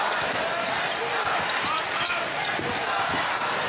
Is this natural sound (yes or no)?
yes